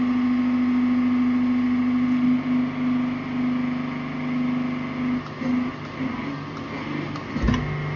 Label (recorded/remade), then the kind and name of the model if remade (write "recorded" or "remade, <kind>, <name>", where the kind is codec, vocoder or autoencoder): recorded